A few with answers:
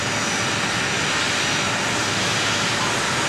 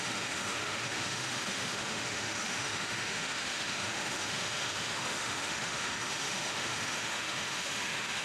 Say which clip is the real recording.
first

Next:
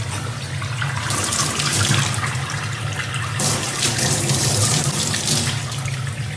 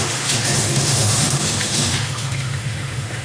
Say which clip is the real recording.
first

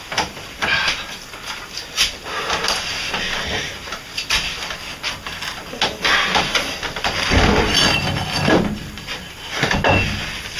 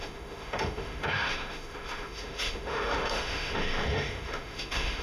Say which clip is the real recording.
first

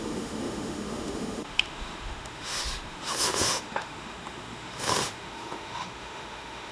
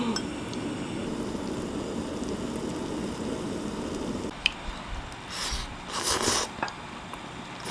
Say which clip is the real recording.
second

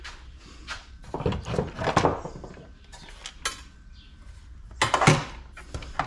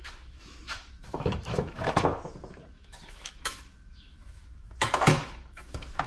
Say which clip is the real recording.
first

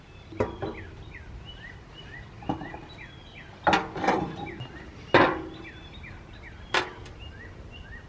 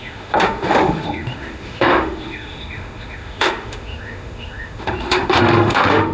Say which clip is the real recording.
first